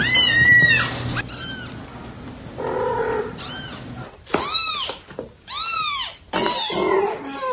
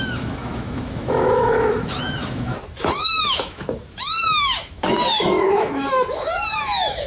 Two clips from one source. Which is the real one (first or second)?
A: first